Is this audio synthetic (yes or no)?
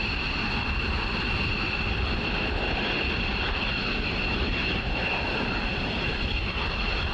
no